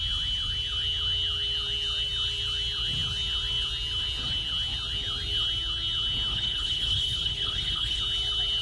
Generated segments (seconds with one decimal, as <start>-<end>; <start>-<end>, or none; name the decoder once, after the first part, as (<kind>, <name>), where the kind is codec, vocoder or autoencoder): 6.3-8.0 (codec, HILCodec)